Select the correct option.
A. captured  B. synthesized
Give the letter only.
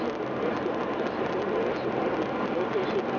A